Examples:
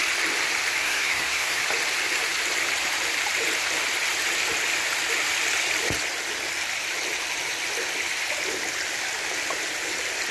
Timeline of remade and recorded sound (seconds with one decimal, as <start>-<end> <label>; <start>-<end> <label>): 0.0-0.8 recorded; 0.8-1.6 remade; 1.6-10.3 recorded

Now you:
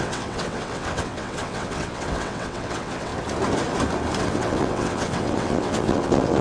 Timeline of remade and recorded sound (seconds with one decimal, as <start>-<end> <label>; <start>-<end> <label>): 0.0-3.1 remade; 3.1-4.2 recorded; 4.2-6.4 remade

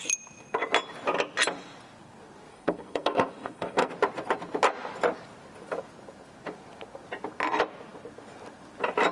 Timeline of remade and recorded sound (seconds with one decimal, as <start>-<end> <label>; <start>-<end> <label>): 0.0-2.5 recorded; 2.5-3.9 remade; 3.9-9.1 recorded

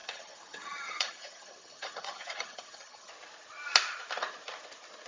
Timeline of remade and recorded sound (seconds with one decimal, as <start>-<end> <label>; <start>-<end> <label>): 0.0-3.1 remade; 3.1-5.1 recorded